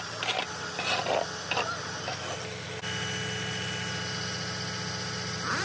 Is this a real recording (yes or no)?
yes